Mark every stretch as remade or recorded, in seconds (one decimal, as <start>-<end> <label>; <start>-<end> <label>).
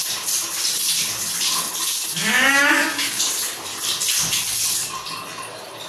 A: 0.0-2.2 recorded; 2.2-3.2 remade; 3.2-5.9 recorded